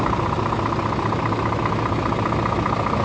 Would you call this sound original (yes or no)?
yes